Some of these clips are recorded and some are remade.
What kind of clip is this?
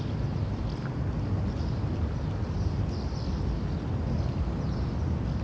recorded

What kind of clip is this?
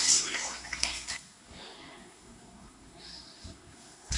remade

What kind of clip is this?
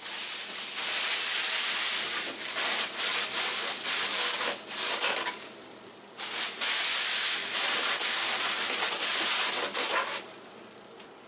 recorded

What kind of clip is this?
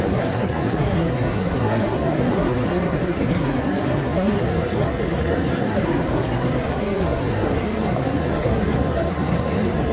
remade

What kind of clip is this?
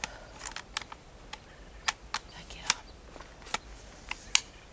recorded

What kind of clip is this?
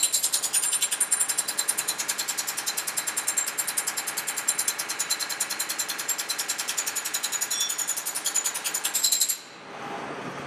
recorded